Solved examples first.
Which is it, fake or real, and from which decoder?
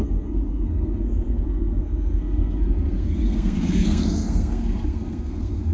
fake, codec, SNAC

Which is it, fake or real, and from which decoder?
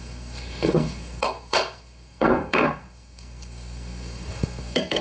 fake, codec, SNAC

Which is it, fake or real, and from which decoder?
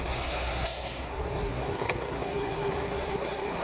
fake, codec, SNAC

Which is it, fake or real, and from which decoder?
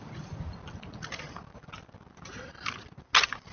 real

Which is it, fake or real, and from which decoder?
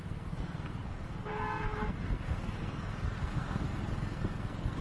fake, codec, SNAC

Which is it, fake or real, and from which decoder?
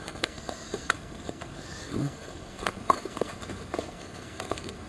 fake, codec, SNAC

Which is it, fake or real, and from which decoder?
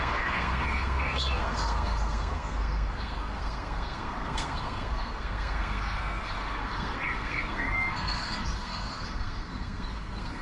fake, codec, SNAC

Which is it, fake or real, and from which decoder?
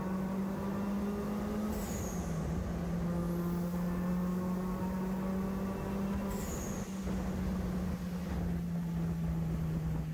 real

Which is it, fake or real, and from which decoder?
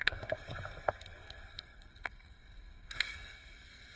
fake, codec, SNAC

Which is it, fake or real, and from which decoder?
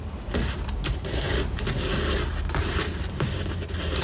real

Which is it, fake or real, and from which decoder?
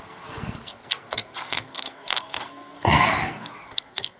fake, codec, SNAC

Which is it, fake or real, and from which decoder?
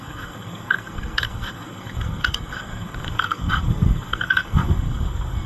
fake, codec, SNAC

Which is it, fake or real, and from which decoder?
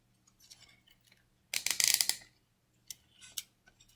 real